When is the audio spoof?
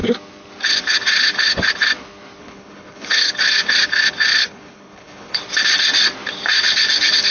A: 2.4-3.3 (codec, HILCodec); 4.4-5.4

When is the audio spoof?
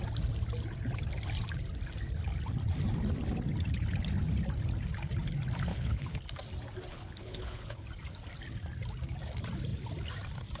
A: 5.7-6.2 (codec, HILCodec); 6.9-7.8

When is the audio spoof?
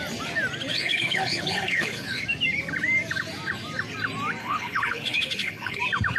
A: 0.7-2.2 (codec, HILCodec); 4.4-5.8